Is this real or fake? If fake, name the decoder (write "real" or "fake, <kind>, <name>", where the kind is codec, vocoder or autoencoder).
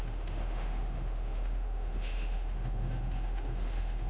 fake, autoencoder, DAC-VAE